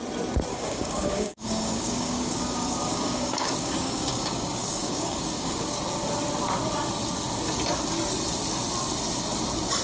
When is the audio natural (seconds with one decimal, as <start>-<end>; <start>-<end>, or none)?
0.0-0.5; 5.8-9.8